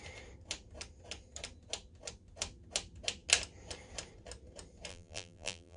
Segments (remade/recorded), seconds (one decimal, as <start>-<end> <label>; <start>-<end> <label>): 0.0-4.9 recorded; 4.9-5.8 remade